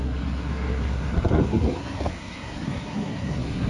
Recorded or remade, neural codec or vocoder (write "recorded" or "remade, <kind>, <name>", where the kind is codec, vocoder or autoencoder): remade, codec, SNAC